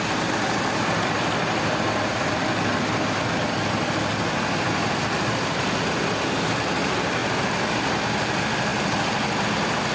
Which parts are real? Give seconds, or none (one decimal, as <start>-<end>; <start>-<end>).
0.0-9.9